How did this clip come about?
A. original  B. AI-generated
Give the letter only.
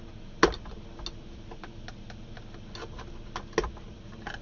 A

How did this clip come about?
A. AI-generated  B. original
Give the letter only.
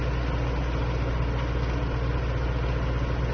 B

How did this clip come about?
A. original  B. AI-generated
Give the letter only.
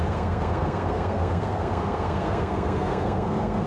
B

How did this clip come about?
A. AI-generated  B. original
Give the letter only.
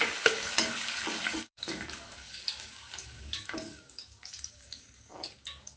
A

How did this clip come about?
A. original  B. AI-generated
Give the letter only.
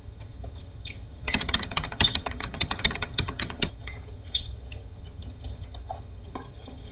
B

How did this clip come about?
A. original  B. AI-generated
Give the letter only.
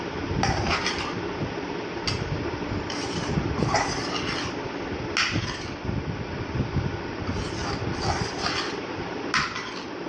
A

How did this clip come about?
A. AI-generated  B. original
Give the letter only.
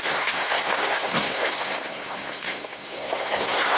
A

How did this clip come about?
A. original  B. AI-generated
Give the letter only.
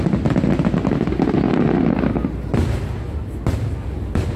A